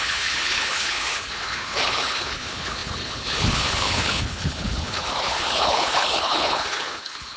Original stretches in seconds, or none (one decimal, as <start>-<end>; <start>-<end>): none